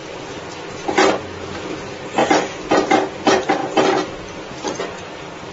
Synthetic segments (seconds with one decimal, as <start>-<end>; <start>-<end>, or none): 1.7-2.2; 3.1-5.5